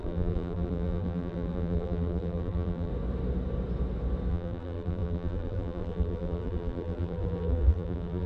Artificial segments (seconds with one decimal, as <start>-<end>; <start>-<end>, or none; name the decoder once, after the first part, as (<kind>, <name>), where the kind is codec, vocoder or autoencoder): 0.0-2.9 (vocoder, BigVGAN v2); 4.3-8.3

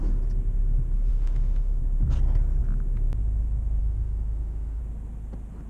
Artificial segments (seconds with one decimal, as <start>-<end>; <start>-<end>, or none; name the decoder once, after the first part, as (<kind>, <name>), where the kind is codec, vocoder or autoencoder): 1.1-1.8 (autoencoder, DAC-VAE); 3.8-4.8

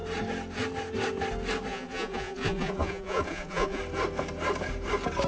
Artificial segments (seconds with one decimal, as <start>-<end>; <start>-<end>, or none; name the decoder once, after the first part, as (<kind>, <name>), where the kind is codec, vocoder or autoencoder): 1.7-3.8 (vocoder, Vocos)

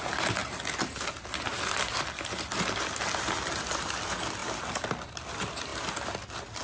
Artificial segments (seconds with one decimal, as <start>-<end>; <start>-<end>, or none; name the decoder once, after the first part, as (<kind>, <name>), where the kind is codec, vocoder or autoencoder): none

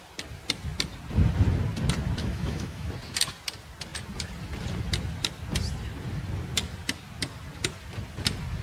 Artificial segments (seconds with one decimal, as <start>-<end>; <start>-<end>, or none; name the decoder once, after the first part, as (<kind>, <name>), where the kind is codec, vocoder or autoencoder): 2.2-2.9 (autoencoder, DAC-VAE)